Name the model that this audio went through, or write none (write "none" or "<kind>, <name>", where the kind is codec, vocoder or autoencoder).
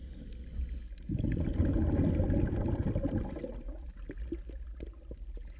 none